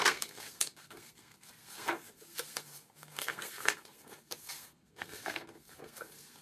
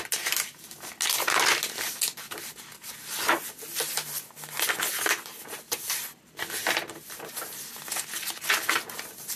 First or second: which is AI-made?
first